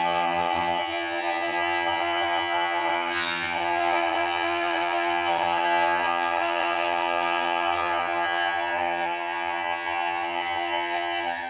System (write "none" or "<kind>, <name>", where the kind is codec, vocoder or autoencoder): vocoder, HiFi-GAN